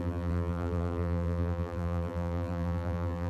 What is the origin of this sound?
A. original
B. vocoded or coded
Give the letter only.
B